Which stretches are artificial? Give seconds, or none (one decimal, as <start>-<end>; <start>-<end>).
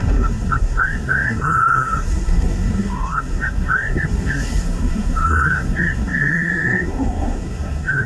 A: 0.0-8.1